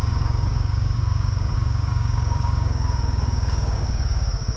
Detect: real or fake fake